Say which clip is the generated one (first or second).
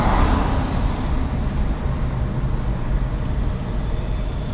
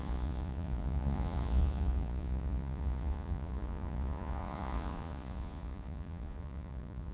second